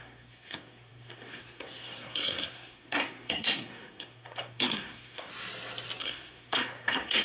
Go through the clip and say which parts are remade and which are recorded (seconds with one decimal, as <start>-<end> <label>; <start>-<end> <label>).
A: 0.0-5.3 remade; 5.3-6.0 recorded; 6.0-7.2 remade